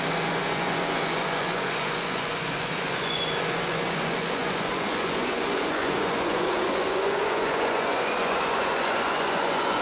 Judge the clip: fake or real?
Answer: fake